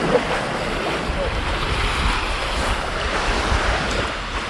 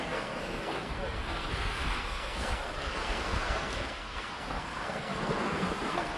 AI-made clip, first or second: second